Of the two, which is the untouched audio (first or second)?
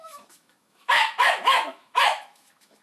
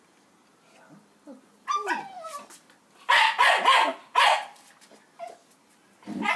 second